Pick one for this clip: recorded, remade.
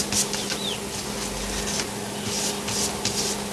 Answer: recorded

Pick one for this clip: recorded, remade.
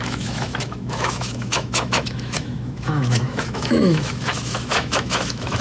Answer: remade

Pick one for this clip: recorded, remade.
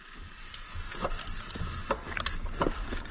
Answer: recorded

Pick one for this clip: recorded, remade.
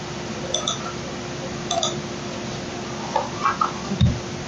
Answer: recorded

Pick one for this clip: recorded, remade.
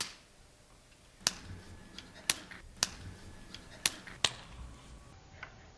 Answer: recorded